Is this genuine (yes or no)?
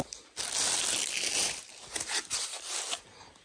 yes